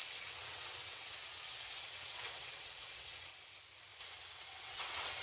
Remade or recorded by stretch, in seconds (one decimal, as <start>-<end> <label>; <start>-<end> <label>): 0.0-3.3 remade; 3.3-4.0 recorded; 4.0-5.2 remade